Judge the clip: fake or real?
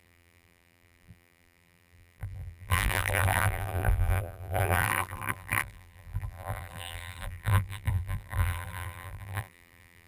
fake